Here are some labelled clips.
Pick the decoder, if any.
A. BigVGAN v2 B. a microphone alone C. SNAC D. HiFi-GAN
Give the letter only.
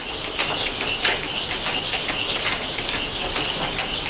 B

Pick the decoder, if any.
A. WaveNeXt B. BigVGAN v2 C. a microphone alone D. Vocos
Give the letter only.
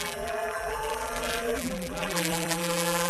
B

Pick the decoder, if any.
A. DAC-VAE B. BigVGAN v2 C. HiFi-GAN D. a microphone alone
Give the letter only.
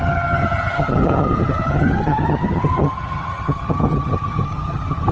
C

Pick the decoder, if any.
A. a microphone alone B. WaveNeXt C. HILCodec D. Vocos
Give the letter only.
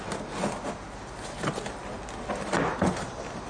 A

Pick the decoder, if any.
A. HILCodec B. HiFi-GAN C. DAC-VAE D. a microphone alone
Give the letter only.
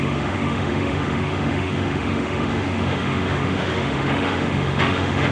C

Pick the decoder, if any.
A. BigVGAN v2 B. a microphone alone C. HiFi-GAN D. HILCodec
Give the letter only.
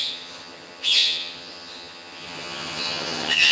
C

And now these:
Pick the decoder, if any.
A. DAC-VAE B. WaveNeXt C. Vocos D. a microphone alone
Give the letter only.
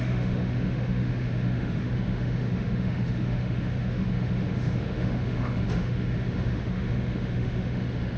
A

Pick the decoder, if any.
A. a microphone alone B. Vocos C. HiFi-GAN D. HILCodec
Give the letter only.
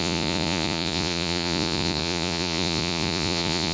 B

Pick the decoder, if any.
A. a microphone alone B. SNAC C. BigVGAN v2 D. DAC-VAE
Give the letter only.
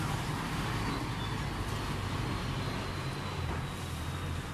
A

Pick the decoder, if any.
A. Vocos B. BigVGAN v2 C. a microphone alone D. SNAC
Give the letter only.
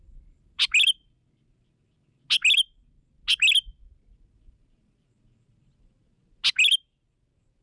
C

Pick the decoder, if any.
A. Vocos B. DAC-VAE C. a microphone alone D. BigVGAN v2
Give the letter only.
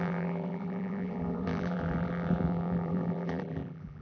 D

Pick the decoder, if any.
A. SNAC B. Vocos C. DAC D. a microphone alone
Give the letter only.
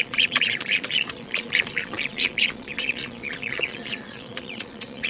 B